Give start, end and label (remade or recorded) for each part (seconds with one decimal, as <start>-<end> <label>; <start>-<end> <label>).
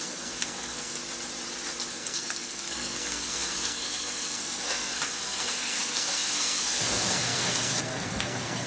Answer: 0.0-1.0 remade; 1.0-1.9 recorded; 1.9-8.7 remade